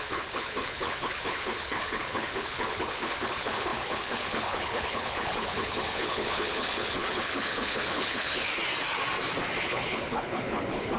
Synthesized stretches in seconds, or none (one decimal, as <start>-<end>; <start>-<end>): 0.0-8.5; 9.6-11.0